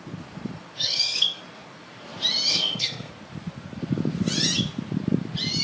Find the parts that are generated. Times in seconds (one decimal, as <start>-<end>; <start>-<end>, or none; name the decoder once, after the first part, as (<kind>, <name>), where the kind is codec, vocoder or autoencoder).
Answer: 0.8-1.4 (codec, SNAC); 2.5-3.1